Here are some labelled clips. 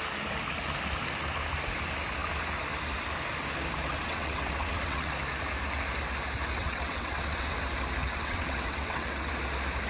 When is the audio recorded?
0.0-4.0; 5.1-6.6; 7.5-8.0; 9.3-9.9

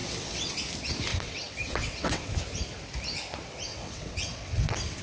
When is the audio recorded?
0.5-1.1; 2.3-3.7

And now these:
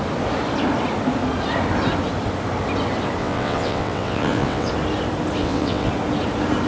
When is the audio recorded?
0.0-3.2; 4.7-5.4; 5.9-6.7

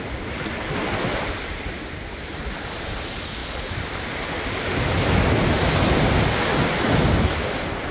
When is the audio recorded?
0.0-7.9